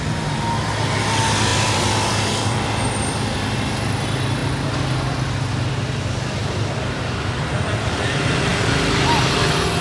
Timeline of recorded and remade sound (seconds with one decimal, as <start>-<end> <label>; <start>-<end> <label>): 0.0-9.8 recorded